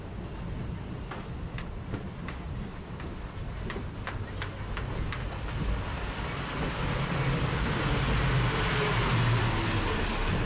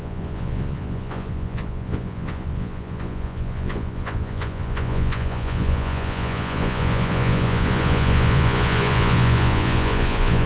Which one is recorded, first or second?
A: first